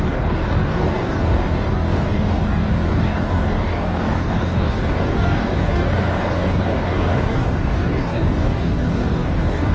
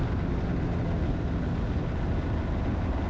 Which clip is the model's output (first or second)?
first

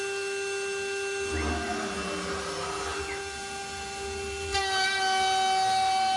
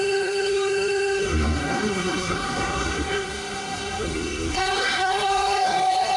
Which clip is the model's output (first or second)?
second